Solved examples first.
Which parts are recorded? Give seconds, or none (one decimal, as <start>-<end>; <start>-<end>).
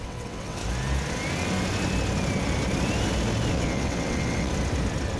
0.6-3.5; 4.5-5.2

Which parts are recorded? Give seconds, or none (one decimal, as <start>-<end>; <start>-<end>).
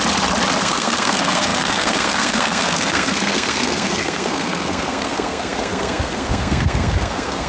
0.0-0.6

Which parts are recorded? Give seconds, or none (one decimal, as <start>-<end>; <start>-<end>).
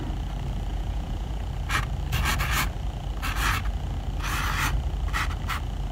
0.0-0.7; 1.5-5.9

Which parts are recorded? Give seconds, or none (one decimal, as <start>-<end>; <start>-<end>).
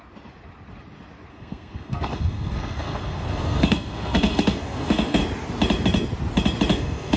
0.0-1.3; 5.2-6.7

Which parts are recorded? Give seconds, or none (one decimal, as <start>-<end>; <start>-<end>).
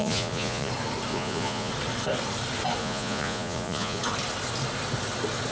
0.7-1.1; 1.7-2.8; 4.0-5.5